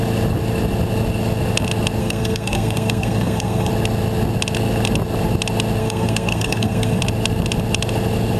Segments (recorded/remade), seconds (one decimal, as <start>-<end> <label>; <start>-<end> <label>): 0.0-2.0 recorded; 2.0-3.7 remade; 3.7-5.8 recorded; 5.8-7.0 remade; 7.0-8.4 recorded